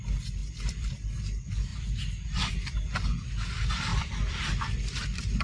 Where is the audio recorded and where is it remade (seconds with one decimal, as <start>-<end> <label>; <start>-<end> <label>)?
0.0-0.4 recorded; 0.4-0.9 remade; 0.9-1.7 recorded; 1.7-2.5 remade; 2.5-3.9 recorded; 3.9-5.4 remade